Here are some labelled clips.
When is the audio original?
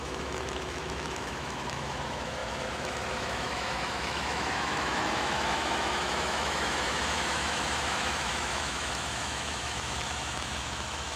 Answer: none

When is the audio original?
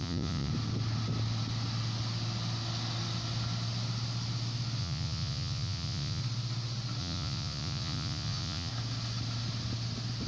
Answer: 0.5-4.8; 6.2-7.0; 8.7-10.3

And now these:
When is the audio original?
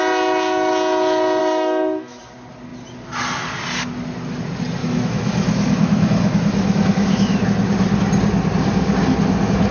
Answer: 0.0-1.4; 2.2-4.8; 7.4-9.7